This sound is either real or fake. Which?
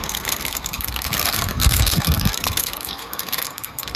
fake